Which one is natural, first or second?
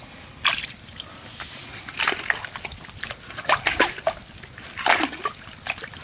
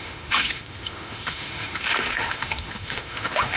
first